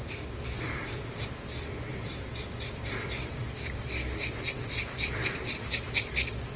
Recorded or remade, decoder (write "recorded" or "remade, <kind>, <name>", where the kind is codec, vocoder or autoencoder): remade, vocoder, BigVGAN v2